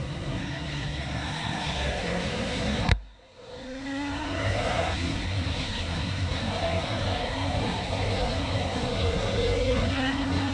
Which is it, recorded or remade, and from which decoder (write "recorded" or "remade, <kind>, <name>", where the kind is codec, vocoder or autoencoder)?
remade, codec, SNAC